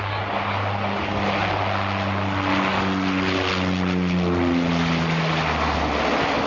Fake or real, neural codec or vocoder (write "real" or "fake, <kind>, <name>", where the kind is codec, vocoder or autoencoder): real